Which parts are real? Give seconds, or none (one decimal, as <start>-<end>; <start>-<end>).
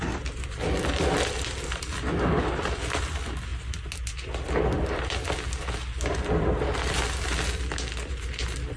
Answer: 0.0-8.8